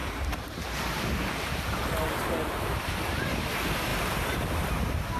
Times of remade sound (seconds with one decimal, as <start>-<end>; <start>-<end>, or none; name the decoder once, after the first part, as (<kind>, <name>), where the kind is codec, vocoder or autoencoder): 0.0-1.1 (vocoder, BigVGAN v2); 2.4-3.5; 3.9-4.7